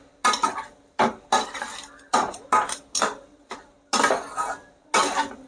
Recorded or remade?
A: recorded